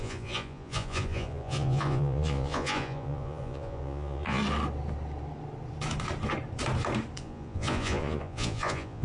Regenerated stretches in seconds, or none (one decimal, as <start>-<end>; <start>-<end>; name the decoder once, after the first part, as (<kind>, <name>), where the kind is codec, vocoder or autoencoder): 0.0-4.4 (vocoder, Vocos); 7.2-9.0

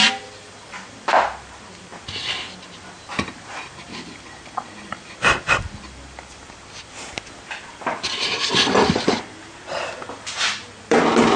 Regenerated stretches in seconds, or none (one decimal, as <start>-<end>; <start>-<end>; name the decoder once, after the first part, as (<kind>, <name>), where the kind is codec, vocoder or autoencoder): none

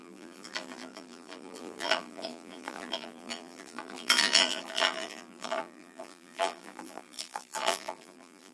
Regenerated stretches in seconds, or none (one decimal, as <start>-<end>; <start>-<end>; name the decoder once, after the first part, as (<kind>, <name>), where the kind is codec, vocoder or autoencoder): 0.0-8.5 (vocoder, BigVGAN v2)

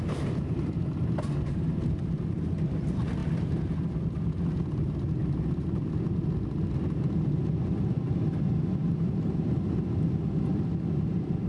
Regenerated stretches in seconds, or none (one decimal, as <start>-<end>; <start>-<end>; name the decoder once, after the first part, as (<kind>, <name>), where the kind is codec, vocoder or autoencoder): none

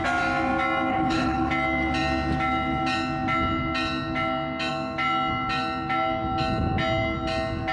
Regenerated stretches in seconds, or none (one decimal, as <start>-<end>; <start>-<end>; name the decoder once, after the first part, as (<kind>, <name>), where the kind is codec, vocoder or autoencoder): 0.9-1.5 (codec, HILCodec)